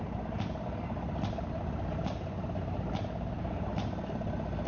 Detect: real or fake real